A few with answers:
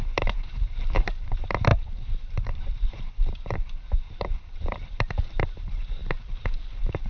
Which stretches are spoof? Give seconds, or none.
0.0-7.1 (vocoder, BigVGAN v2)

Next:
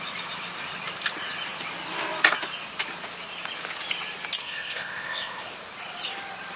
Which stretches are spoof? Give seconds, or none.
4.4-5.5 (codec, ZipCodec)

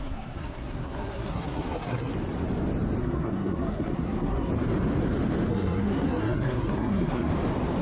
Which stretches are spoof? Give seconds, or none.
0.0-2.1 (codec, SNAC); 3.0-4.5; 5.5-7.3

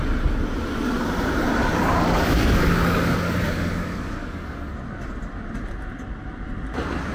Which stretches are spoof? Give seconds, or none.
1.6-4.7 (codec, DAC)

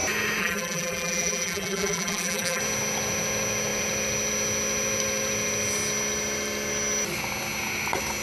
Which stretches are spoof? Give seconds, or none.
0.4-2.6 (vocoder, BigVGAN v2)

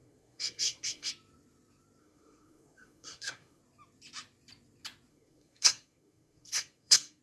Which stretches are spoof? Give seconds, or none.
0.0-1.1 (codec, SNAC); 2.0-3.6; 5.1-7.2

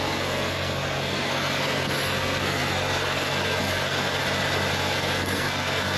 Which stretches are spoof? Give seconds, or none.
0.0-4.2 (codec, SNAC); 4.7-6.0